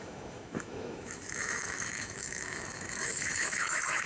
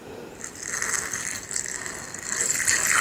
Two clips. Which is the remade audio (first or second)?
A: first